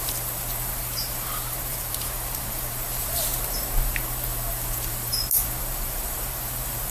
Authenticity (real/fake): fake